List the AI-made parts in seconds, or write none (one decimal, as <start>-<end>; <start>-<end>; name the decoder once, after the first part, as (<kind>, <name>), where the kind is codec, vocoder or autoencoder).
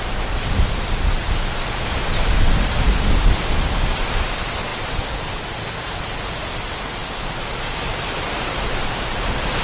none